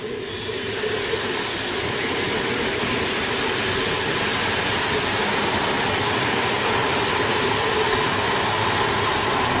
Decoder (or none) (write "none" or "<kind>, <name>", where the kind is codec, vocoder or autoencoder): none